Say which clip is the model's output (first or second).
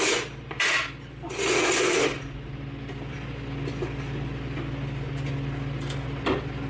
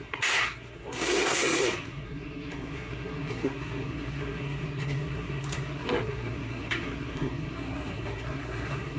second